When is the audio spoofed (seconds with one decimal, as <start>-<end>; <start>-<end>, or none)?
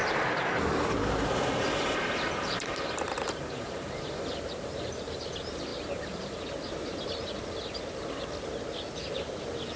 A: 0.0-5.2; 5.7-6.4